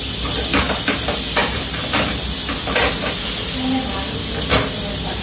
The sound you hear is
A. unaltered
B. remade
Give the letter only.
A